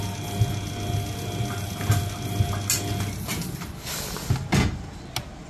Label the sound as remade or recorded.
recorded